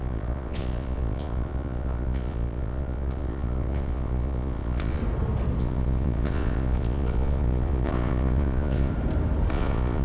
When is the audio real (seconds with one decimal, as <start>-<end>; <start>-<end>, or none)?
5.0-5.6; 8.9-9.5